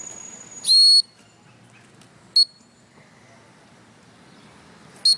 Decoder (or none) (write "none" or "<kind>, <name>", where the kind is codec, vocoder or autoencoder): none